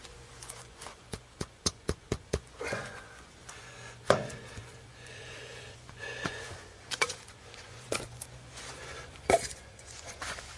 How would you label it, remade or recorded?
remade